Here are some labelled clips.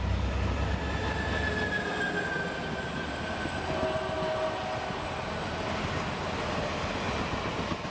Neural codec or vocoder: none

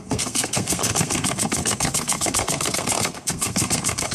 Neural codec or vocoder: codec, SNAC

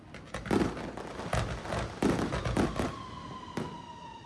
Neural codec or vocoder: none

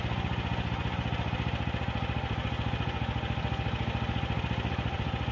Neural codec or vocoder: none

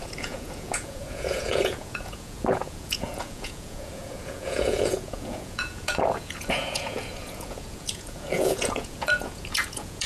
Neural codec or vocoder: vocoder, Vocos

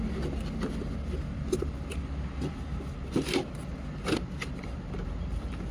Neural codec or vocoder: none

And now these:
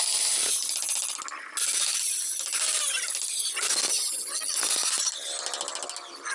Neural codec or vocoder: none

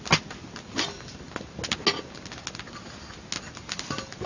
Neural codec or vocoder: none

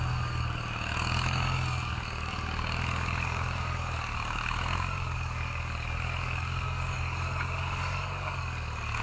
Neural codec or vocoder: codec, DAC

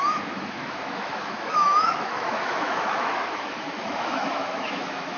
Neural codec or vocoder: autoencoder, DAC-VAE